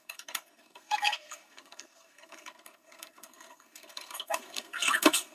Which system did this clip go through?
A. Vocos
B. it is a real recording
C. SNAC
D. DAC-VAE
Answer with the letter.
C